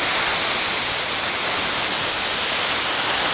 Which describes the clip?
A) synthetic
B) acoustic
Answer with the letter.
B